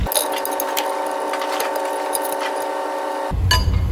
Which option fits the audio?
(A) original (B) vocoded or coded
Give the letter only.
A